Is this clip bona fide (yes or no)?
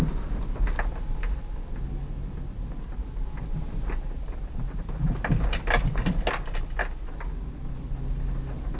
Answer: yes